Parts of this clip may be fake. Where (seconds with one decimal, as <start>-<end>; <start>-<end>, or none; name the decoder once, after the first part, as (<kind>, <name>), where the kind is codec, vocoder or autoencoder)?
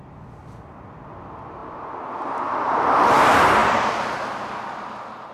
3.6-5.3 (vocoder, BigVGAN v2)